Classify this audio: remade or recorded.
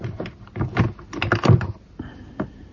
recorded